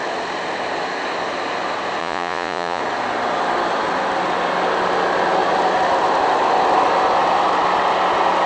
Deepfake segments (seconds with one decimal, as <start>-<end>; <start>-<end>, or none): 2.0-2.8